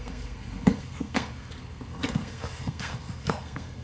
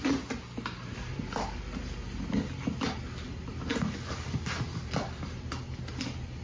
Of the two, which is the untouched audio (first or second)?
second